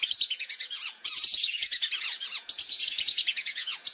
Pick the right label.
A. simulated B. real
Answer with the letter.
A